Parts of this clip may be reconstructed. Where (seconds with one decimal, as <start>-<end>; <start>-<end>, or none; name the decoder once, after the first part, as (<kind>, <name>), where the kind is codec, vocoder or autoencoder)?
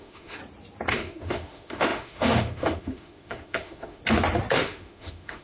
0.0-0.4 (autoencoder, DAC-VAE); 0.9-4.0; 4.5-5.4